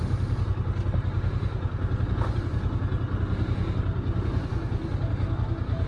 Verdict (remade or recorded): recorded